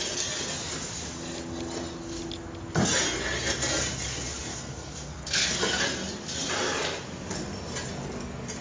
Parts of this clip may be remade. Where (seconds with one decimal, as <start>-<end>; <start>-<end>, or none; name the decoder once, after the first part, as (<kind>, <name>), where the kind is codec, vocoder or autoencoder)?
4.5-5.6 (codec, SNAC)